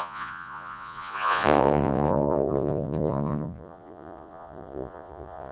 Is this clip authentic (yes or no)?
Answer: no